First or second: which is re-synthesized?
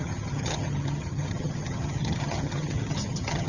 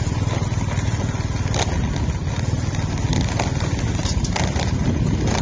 first